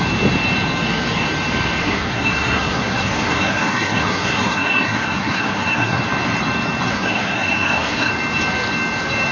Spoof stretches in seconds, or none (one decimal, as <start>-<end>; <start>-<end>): 1.8-6.0; 6.9-8.1